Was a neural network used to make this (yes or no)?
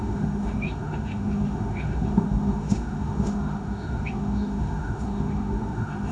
yes